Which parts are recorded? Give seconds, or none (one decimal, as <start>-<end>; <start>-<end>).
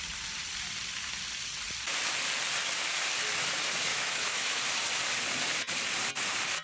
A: 0.0-3.9; 4.6-6.6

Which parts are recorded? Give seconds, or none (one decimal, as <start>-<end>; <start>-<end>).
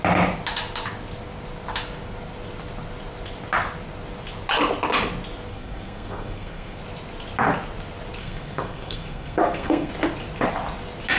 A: 0.0-5.5; 6.8-8.2; 9.9-11.2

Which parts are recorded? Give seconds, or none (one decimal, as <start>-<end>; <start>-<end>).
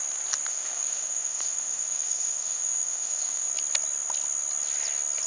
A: 0.0-0.5; 3.5-5.3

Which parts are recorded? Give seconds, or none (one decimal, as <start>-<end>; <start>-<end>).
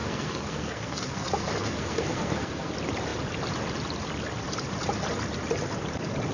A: 2.7-6.3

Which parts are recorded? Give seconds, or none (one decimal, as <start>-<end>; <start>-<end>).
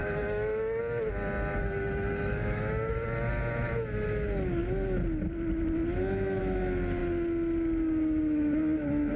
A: 0.8-1.6; 2.9-9.2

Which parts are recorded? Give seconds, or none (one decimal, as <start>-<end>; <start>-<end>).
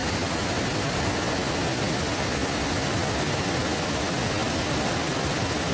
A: 0.0-5.7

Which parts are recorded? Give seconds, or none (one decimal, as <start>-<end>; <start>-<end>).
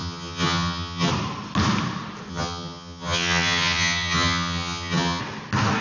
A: 1.1-2.3; 5.2-5.8